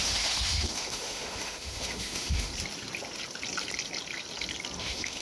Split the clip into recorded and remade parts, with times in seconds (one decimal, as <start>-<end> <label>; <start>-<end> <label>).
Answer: 0.0-2.5 remade; 2.5-4.8 recorded; 4.8-5.2 remade